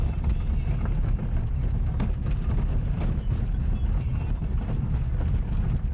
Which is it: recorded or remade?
recorded